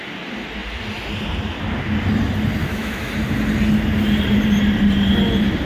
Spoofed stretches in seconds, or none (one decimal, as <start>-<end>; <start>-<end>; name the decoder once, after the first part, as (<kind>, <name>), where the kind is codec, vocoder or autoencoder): 2.6-3.1 (autoencoder, DAC-VAE)